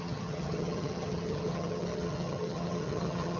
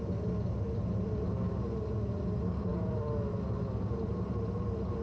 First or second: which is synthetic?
first